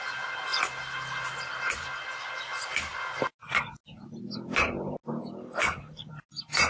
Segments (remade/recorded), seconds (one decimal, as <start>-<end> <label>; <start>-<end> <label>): 0.0-5.4 recorded; 5.4-6.1 remade; 6.1-6.7 recorded